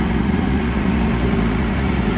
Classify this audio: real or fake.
fake